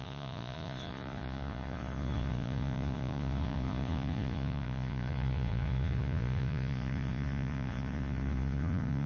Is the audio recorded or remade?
remade